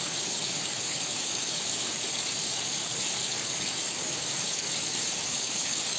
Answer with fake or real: fake